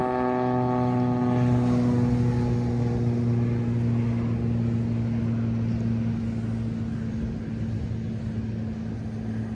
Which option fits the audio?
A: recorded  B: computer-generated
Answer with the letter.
A